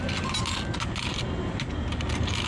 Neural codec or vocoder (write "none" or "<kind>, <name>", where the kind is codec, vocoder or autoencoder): none